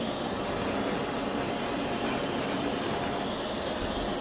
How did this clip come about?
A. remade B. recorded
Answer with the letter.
B